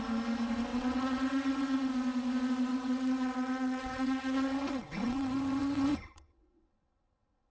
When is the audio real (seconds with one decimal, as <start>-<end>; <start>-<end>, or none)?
0.0-0.7; 1.9-2.7